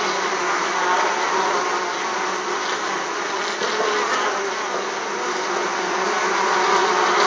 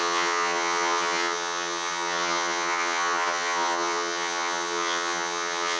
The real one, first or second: first